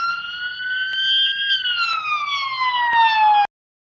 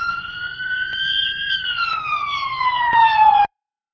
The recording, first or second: first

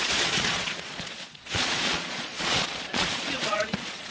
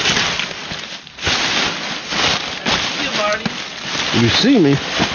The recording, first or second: second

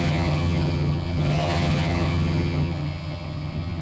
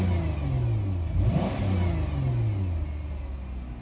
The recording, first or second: second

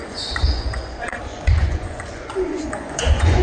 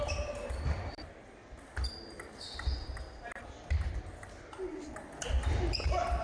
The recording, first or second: second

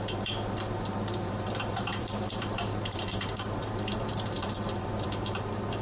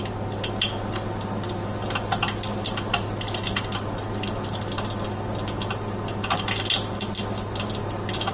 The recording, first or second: second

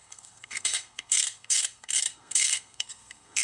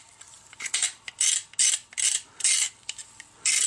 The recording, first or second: second